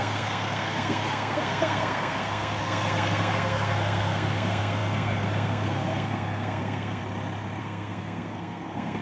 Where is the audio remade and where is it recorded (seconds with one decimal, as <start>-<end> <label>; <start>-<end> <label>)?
0.0-7.0 remade; 7.0-7.6 recorded; 7.6-9.0 remade